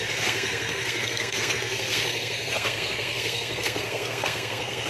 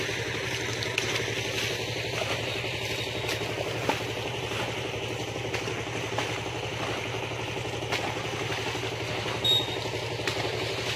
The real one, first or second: second